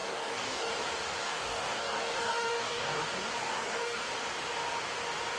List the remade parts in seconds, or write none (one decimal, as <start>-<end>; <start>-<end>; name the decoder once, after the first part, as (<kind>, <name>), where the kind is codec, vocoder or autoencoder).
0.0-0.7 (codec, DAC); 1.2-3.0; 3.4-4.0